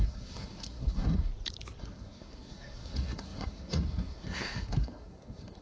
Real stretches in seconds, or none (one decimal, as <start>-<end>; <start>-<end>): 1.3-1.8